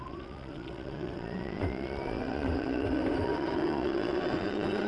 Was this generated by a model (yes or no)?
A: yes